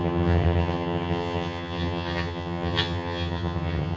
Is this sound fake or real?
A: fake